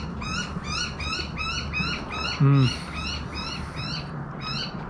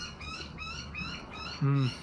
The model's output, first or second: second